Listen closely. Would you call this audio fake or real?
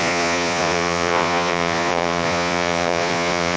fake